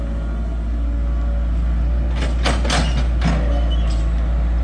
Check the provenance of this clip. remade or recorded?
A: recorded